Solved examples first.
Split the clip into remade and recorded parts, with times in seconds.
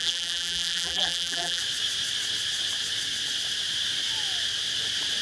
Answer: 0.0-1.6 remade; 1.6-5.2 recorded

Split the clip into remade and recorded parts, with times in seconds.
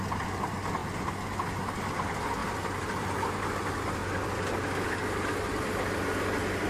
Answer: 0.0-2.4 recorded; 2.4-3.0 remade; 3.0-6.7 recorded